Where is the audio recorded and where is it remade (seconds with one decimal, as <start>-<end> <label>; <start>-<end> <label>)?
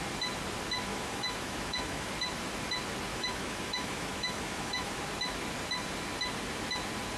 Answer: 0.0-0.9 recorded; 0.9-2.1 remade; 2.1-3.1 recorded; 3.1-5.0 remade; 5.0-7.2 recorded